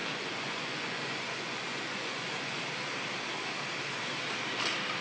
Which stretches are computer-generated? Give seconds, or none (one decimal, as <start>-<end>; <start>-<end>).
0.0-2.6